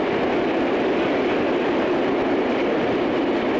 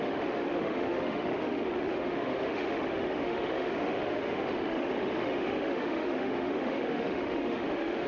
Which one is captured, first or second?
first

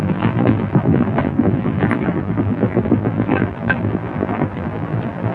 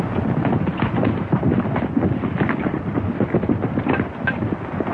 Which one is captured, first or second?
second